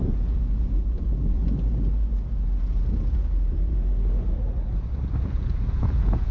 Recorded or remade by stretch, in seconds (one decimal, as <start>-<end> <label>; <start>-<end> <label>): 0.0-1.4 remade; 1.4-5.2 recorded; 5.2-6.3 remade